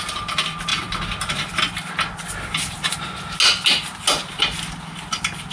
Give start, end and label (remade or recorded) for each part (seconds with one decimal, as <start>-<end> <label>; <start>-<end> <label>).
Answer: 0.0-5.5 recorded